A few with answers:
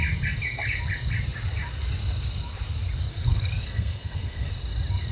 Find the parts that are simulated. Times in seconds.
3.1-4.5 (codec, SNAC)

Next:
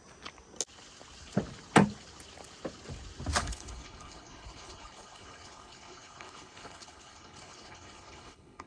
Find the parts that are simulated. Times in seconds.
3.4-8.7 (codec, HILCodec)

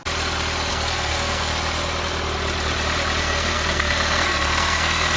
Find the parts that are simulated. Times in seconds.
0.7-1.5 (codec, SNAC); 3.2-5.2